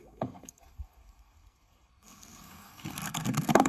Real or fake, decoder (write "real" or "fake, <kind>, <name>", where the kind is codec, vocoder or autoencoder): fake, codec, SNAC